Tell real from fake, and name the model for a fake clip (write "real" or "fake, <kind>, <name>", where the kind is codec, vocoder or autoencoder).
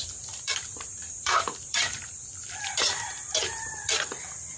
fake, vocoder, BigVGAN v2